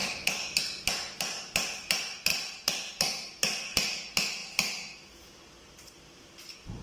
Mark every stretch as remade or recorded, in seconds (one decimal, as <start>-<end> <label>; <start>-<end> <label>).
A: 0.0-6.8 recorded